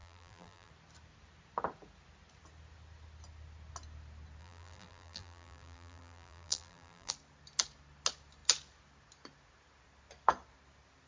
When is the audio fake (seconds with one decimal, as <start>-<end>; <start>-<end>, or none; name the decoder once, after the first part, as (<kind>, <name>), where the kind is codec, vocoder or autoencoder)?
0.0-0.7 (vocoder, BigVGAN v2); 4.4-7.1